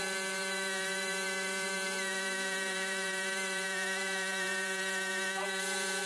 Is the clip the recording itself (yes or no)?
no